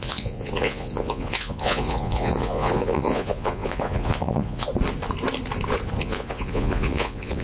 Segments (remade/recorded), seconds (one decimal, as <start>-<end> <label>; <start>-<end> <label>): 0.0-4.7 remade; 4.7-6.0 recorded; 6.0-7.4 remade